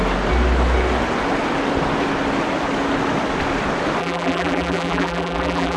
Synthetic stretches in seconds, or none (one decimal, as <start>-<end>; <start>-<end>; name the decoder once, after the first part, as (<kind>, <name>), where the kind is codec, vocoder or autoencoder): 4.0-5.8 (vocoder, BigVGAN v2)